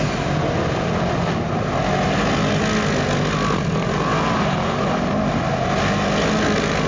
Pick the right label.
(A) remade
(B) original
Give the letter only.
B